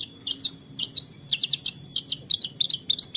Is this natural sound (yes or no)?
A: yes